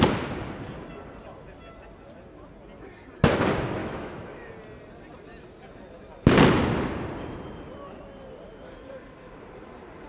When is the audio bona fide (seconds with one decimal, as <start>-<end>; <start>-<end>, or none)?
0.0-3.8; 4.5-10.1